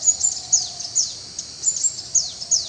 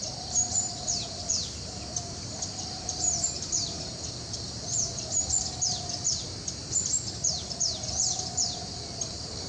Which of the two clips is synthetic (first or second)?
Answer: second